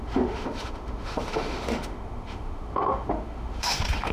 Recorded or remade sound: remade